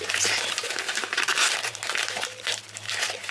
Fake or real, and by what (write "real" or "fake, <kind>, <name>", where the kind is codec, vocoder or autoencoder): real